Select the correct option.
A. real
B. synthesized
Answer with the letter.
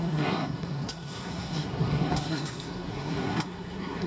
B